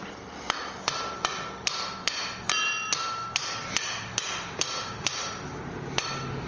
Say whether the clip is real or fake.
real